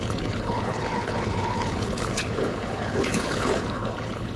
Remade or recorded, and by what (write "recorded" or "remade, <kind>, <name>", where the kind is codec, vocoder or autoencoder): remade, codec, HILCodec